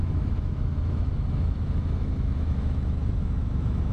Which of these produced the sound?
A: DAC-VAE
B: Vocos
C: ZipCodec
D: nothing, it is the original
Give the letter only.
A